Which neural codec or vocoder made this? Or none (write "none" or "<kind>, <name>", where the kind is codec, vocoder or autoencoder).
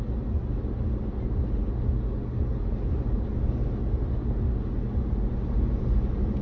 none